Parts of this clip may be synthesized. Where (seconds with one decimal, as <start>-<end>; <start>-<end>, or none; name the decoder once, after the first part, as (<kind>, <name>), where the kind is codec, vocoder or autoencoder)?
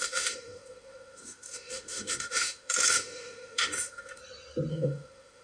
0.0-4.2 (autoencoder, DAC-VAE); 4.7-5.4